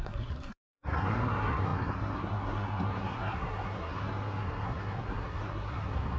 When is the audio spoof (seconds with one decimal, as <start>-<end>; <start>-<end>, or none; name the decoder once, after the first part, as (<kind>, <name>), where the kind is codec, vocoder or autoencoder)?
0.0-6.2 (codec, SNAC)